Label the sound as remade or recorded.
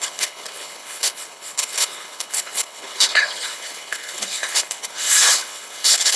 remade